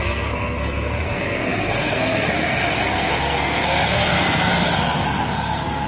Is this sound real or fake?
fake